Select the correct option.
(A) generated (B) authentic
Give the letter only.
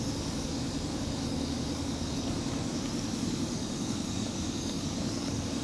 A